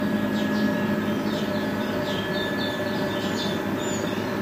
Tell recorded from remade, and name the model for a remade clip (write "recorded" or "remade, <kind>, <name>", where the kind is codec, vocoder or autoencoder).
recorded